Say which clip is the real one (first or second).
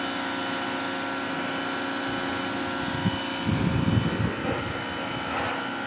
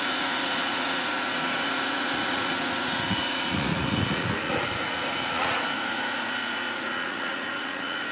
first